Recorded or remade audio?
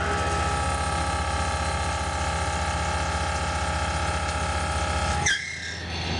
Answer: recorded